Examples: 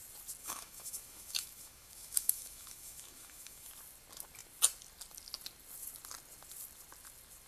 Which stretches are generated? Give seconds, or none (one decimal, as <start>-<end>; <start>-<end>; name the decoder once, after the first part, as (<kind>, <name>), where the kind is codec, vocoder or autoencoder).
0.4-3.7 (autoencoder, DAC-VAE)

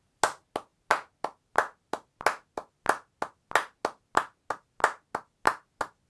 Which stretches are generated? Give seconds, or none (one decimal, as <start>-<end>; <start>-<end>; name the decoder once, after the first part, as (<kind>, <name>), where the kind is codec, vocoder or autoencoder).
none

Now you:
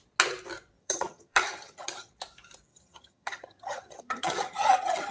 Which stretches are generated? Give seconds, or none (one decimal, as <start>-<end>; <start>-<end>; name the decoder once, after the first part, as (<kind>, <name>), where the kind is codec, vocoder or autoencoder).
0.8-2.1 (vocoder, HiFi-GAN); 2.7-5.1

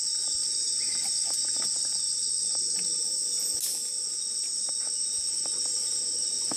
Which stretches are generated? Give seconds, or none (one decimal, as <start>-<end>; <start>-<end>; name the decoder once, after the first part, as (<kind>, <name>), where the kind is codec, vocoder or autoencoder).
none